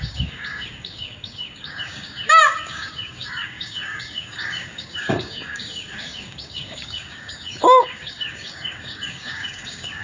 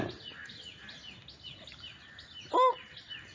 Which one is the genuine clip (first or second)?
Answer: second